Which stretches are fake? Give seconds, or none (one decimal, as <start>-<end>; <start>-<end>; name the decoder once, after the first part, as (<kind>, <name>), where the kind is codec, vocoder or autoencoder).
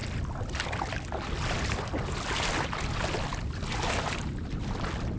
none